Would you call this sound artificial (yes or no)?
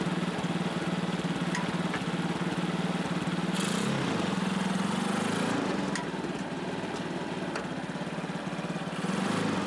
no